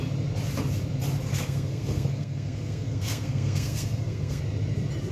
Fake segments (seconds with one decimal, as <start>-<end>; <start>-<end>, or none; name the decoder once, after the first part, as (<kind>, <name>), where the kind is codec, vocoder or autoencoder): 1.3-4.4 (codec, SNAC)